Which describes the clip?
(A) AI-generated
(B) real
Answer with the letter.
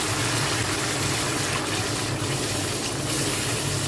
B